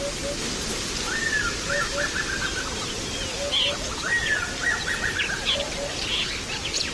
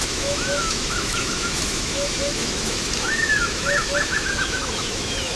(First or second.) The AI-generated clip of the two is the second